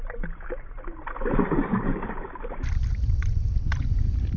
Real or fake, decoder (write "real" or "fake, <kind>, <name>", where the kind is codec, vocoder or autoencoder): real